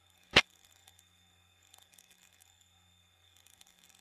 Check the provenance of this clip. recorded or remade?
remade